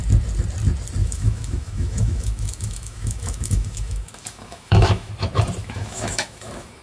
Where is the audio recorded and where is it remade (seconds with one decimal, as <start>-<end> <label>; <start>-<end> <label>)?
0.0-1.0 recorded; 1.0-5.1 remade; 5.1-5.6 recorded; 5.6-6.8 remade